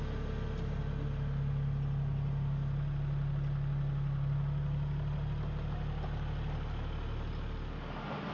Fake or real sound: real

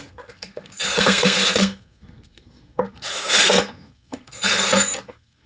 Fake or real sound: fake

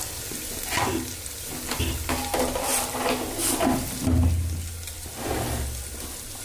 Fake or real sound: real